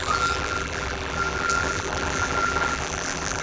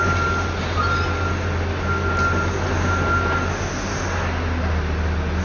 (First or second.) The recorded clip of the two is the second